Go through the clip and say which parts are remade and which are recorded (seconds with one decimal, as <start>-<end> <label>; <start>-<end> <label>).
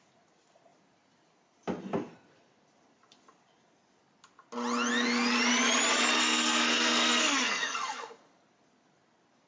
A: 0.0-6.2 recorded; 6.2-8.1 remade; 8.1-9.5 recorded